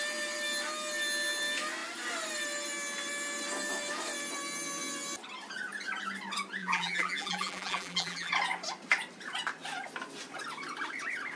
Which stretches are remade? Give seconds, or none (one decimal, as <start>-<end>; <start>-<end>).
6.6-8.3

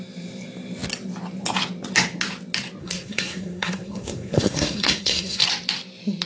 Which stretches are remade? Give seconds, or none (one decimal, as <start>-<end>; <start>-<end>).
2.8-5.4

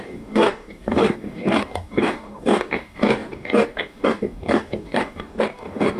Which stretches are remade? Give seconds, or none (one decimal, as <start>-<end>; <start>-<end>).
0.0-6.0

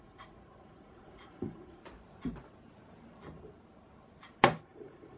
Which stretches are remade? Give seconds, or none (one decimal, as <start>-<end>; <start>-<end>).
0.0-1.8; 4.6-5.2

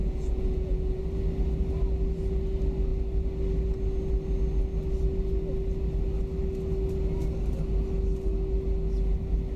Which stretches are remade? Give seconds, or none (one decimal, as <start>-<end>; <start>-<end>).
0.0-1.0

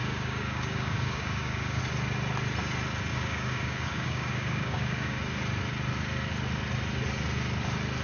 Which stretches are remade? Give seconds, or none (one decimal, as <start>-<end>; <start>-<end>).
0.0-1.8; 3.1-5.2

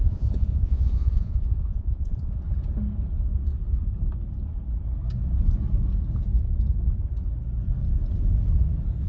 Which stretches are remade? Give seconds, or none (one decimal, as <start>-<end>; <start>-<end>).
0.0-2.4